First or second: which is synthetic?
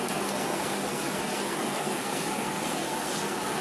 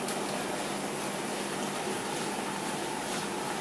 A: first